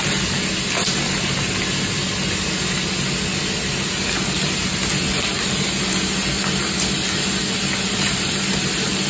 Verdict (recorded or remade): recorded